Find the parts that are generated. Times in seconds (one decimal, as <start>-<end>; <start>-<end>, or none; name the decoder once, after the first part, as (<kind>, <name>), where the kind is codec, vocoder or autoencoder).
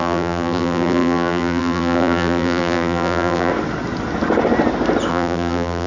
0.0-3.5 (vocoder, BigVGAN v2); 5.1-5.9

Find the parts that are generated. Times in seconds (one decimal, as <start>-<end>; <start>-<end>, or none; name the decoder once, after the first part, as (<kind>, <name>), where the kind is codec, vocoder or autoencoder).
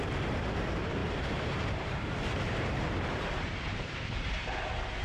0.0-5.0 (vocoder, BigVGAN v2)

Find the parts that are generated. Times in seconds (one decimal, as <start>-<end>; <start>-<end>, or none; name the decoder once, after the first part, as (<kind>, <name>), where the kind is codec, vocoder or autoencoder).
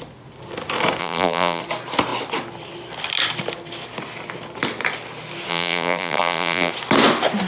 1.0-1.6 (vocoder, BigVGAN v2); 5.5-6.7